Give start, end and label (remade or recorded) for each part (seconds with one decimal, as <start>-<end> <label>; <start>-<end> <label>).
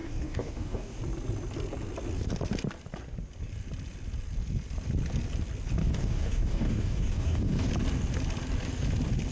0.0-1.0 remade; 1.0-5.8 recorded; 5.8-7.7 remade; 7.7-9.3 recorded